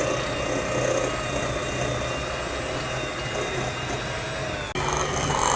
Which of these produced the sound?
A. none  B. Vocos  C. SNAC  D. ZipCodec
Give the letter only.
A